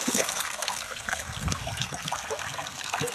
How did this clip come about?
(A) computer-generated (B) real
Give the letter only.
A